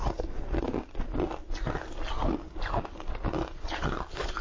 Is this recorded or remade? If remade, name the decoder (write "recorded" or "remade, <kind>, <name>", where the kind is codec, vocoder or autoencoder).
recorded